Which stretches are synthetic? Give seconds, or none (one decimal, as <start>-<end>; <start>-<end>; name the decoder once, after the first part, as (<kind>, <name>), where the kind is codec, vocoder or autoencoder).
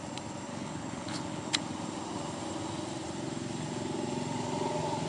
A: 0.5-1.6 (codec, HILCodec)